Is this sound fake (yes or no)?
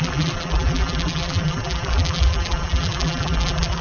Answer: yes